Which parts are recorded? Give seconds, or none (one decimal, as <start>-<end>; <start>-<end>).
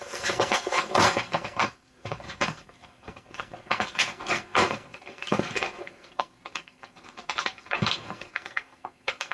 none